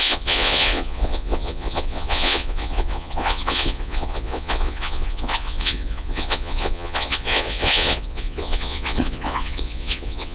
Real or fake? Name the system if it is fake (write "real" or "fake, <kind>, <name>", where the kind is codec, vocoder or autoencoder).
fake, vocoder, Vocos